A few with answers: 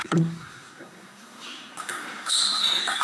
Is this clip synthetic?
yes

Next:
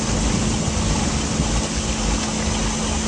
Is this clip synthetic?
no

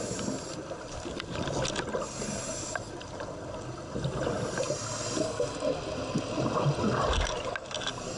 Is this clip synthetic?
no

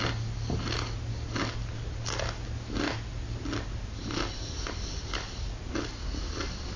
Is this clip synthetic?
no